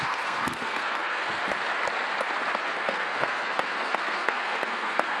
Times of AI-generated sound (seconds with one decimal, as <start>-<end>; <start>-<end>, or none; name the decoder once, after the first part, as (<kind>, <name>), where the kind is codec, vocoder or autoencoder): 0.0-1.4 (codec, SNAC); 2.6-5.2